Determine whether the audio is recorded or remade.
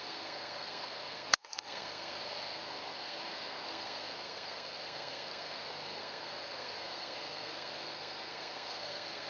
remade